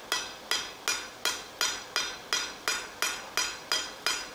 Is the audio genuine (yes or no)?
yes